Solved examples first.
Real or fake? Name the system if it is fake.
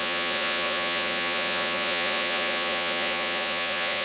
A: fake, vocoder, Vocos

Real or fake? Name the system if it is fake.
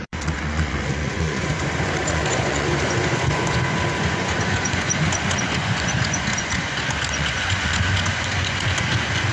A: fake, vocoder, Vocos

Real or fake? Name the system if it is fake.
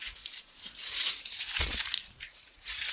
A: fake, vocoder, Vocos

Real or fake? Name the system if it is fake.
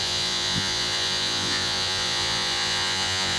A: fake, vocoder, Vocos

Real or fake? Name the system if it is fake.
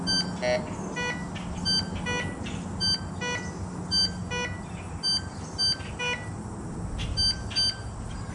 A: real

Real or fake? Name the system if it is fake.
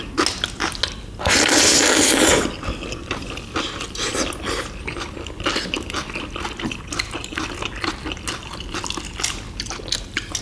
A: real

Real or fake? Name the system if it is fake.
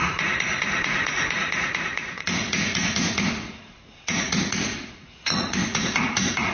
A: fake, vocoder, Vocos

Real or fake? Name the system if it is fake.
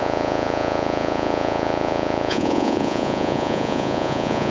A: fake, vocoder, Vocos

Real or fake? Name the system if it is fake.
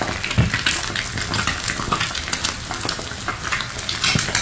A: real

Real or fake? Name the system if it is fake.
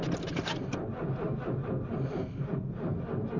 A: real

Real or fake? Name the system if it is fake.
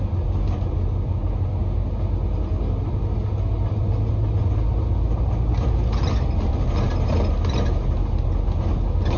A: real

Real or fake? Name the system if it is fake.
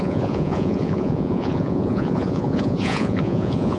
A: fake, vocoder, Vocos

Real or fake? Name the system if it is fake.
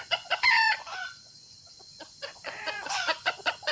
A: fake, vocoder, Vocos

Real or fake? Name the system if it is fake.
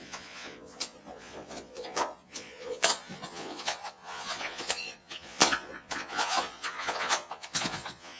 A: fake, vocoder, Vocos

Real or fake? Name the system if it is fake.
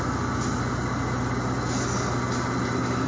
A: real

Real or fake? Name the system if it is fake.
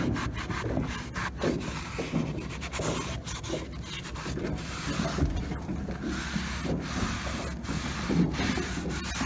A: real